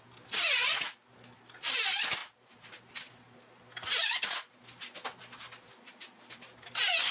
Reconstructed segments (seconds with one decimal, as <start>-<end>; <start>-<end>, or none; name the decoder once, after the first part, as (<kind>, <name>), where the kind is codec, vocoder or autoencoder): none